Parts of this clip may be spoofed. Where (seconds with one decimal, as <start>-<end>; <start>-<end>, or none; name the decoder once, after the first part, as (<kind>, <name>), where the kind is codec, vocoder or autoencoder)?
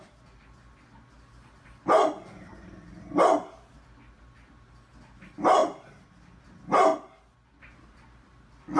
none